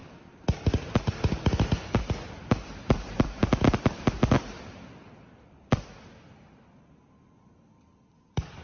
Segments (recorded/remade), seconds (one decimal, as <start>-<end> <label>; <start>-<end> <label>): 0.0-8.6 recorded